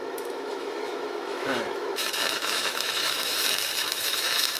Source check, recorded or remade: remade